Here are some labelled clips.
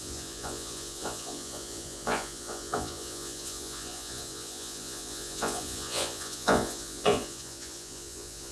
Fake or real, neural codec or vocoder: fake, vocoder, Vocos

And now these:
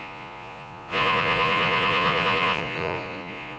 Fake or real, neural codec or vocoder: fake, vocoder, Vocos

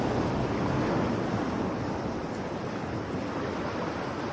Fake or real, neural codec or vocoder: real